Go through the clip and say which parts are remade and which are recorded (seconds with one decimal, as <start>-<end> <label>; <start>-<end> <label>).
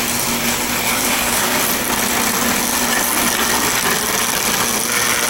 0.0-0.9 recorded; 0.9-1.6 remade; 1.6-5.3 recorded